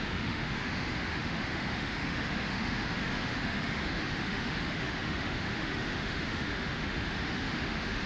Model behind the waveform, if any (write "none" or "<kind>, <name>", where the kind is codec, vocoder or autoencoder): autoencoder, DAC-VAE